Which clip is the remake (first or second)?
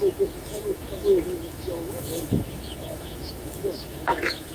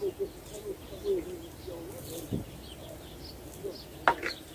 first